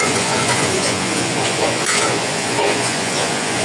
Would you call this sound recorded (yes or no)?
no